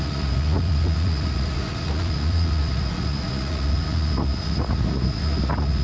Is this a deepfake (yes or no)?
yes